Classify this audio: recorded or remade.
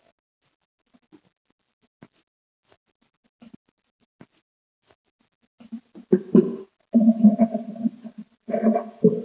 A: recorded